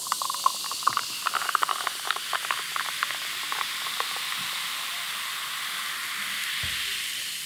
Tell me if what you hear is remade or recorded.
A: recorded